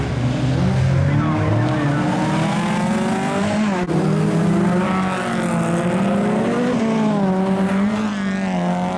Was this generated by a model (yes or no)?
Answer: no